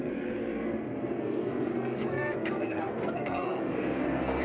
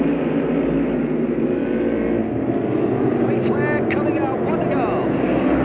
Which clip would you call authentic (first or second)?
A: second